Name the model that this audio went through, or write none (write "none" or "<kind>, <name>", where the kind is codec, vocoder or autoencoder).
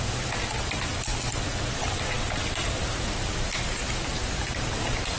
vocoder, BigVGAN v2